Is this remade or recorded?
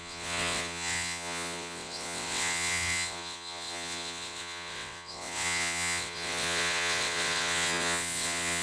remade